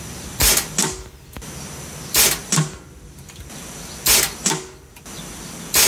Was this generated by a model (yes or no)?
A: no